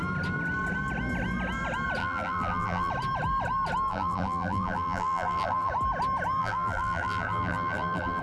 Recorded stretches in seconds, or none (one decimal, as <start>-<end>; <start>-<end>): 0.0-2.0; 2.9-3.9; 5.7-6.4